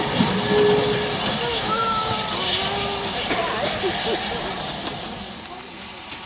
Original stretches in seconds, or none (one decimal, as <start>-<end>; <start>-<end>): 0.0-1.5; 2.1-6.3